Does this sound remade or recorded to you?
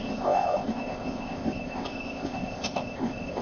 remade